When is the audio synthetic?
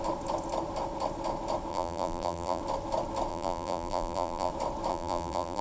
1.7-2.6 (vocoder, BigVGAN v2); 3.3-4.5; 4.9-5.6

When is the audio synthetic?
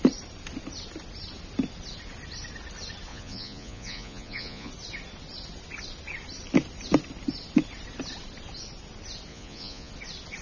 3.1-4.7 (vocoder, Vocos); 9.3-9.9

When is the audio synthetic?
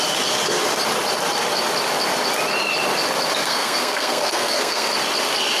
3.4-4.9 (codec, SNAC)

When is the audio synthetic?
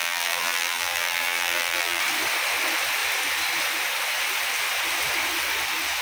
0.0-2.0 (vocoder, BigVGAN v2)